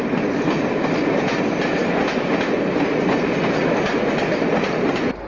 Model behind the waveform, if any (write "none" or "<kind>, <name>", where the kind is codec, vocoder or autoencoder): none